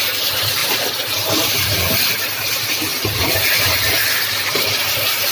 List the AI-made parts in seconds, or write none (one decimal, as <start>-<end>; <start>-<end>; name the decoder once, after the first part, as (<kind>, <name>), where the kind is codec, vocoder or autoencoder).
none